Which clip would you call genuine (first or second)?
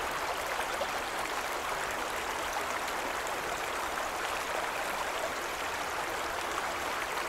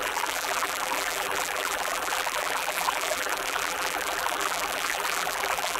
first